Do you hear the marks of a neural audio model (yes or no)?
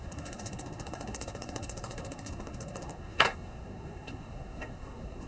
yes